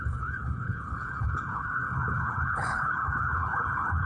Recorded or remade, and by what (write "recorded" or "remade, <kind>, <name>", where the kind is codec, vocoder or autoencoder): remade, codec, HILCodec